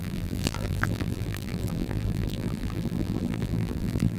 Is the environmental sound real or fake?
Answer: fake